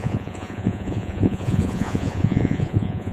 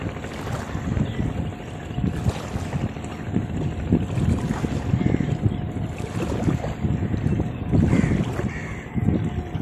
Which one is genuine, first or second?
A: second